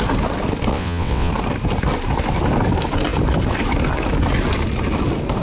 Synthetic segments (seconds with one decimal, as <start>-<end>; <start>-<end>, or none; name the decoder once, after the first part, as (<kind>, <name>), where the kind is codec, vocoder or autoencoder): 0.7-1.3 (vocoder, WaveNeXt)